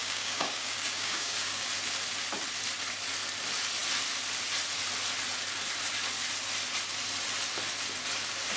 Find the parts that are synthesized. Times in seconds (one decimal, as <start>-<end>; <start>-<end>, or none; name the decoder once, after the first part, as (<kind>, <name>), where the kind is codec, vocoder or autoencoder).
0.0-1.7 (codec, DAC)